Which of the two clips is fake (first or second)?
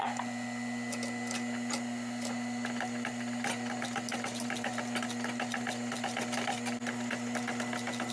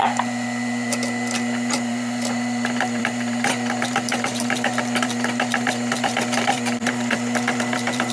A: second